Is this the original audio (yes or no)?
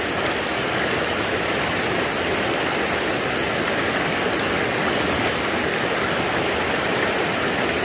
yes